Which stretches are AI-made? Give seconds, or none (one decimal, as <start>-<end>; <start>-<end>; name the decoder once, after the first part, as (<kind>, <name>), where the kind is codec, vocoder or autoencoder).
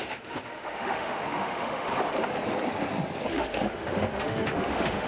0.0-1.9 (autoencoder, DAC-VAE); 3.3-5.1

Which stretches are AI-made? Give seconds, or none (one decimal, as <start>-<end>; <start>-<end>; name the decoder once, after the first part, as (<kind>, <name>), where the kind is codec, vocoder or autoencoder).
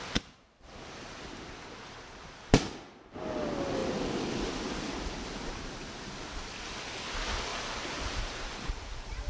7.5-8.9 (vocoder, BigVGAN v2)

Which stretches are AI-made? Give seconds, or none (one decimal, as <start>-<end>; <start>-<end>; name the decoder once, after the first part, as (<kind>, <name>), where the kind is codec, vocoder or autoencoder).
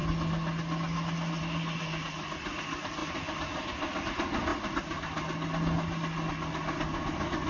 3.0-4.0 (vocoder, BigVGAN v2)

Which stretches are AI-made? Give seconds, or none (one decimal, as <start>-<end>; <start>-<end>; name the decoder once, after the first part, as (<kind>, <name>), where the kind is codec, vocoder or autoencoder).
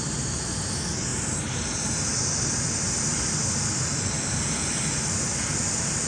none